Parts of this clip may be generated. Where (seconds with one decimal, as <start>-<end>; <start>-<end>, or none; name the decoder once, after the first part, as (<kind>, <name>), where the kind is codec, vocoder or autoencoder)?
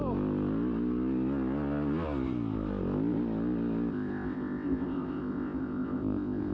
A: 3.9-6.5 (codec, ZipCodec)